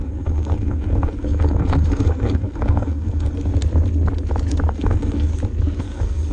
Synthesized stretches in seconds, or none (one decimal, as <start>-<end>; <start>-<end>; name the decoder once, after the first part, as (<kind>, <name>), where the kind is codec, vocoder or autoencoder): 0.0-3.5 (codec, SNAC); 4.7-5.3; 5.8-6.3